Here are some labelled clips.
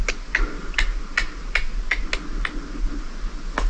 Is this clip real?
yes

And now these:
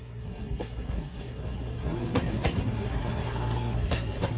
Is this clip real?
no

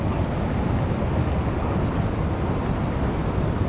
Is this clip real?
yes